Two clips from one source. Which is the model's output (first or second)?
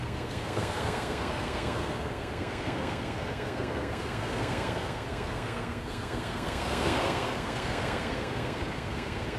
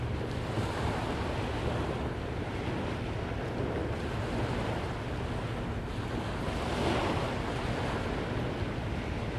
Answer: first